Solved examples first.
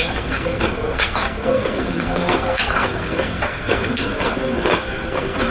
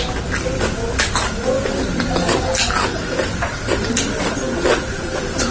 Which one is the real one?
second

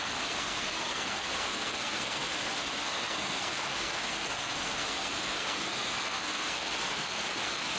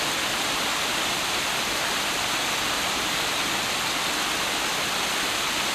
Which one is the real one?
second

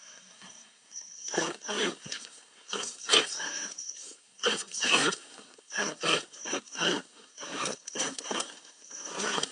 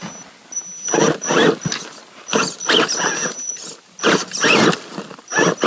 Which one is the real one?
second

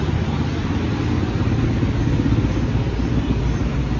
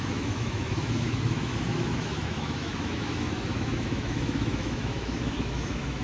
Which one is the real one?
first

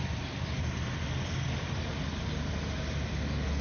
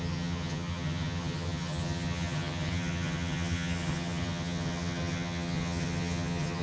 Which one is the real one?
first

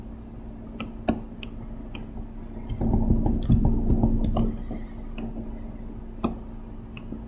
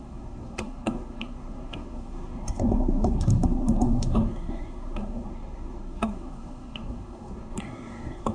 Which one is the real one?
first